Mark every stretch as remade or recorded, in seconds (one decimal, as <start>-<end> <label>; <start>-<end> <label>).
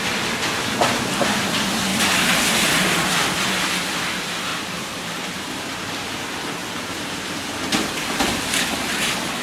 0.0-4.5 recorded; 4.5-5.4 remade; 5.4-6.6 recorded; 6.6-7.6 remade; 7.6-9.4 recorded